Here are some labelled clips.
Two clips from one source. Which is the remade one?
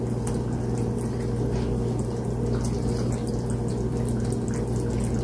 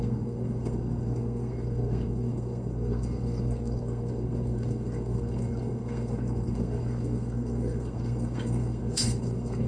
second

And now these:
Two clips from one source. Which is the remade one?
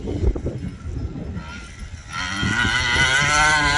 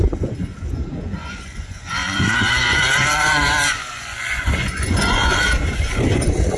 second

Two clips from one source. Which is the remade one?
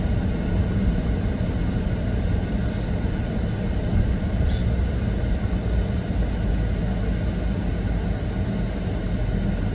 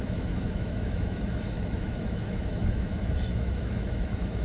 second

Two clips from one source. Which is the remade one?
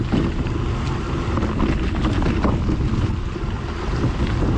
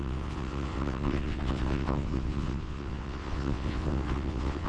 second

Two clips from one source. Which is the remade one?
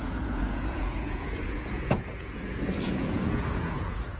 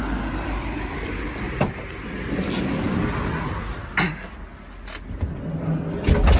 first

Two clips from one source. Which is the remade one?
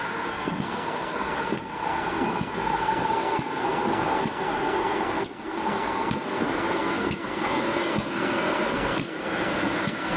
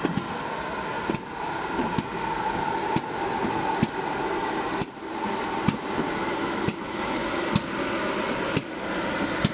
first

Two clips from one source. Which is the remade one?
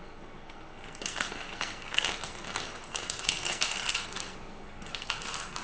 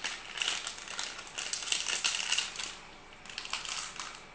first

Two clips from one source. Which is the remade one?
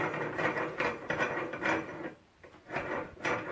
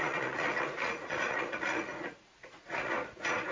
second